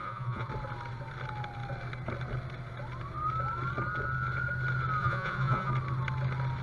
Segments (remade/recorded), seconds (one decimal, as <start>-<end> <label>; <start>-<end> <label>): 0.0-0.5 remade; 0.5-5.0 recorded; 5.0-5.7 remade; 5.7-6.6 recorded